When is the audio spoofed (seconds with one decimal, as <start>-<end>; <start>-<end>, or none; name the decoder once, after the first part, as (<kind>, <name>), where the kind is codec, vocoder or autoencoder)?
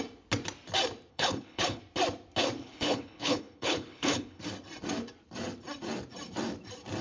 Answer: 1.1-1.8 (codec, HILCodec); 2.6-4.4